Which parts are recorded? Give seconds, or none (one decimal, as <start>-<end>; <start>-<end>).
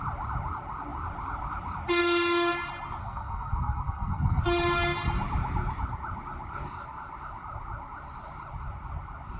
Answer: 0.0-3.0; 4.4-9.4